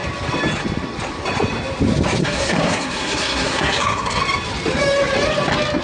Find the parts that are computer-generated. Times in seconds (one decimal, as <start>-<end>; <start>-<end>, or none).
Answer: 2.2-4.2